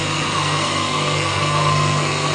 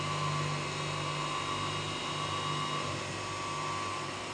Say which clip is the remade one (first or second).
first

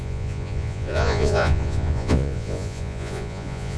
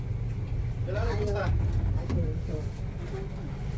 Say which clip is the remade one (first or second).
first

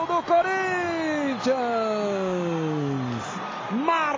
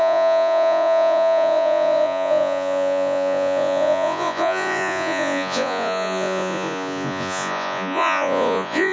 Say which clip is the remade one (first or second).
second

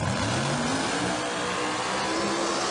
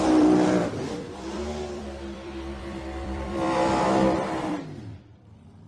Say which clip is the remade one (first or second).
second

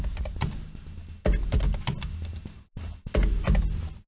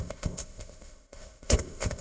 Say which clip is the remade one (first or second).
second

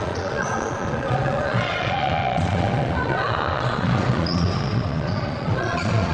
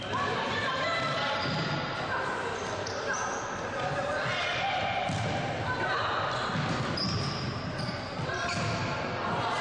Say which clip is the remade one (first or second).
first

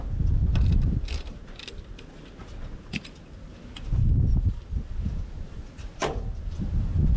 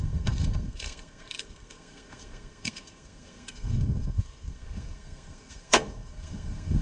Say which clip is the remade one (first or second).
second